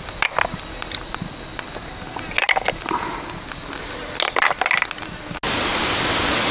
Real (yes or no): yes